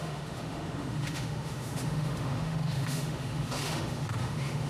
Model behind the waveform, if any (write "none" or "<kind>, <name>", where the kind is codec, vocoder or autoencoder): autoencoder, DAC-VAE